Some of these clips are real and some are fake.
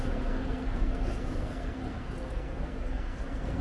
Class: fake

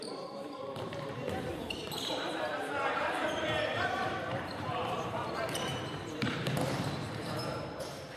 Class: fake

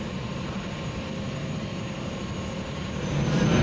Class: fake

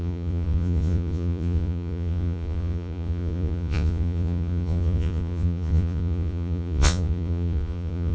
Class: fake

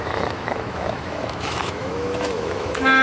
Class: fake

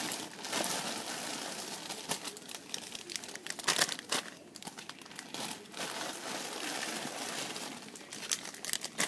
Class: real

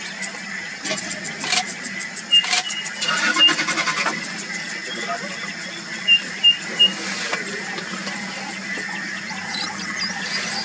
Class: real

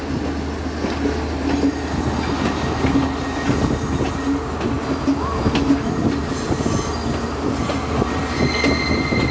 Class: real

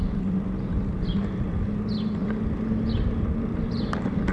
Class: real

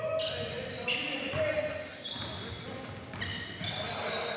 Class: real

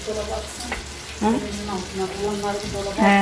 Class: real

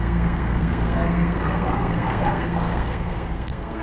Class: fake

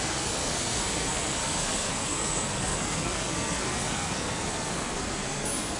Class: fake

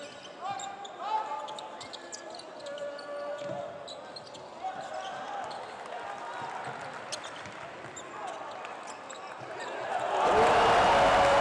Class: real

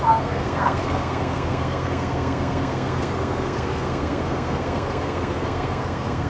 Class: fake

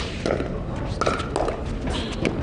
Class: real